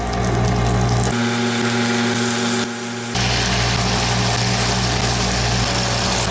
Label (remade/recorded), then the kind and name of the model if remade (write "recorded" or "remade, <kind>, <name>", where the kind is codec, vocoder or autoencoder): recorded